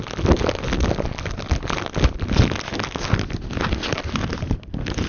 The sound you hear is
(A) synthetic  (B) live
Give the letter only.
B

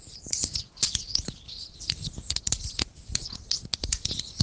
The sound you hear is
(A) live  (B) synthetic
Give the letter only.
A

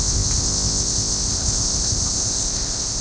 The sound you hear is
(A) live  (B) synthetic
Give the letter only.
B